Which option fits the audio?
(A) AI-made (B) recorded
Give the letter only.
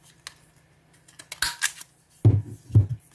B